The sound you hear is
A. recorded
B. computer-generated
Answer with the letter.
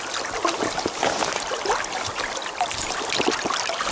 A